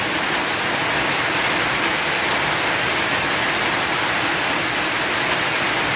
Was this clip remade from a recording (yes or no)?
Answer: no